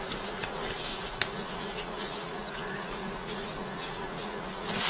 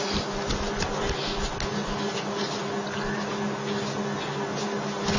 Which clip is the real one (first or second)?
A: second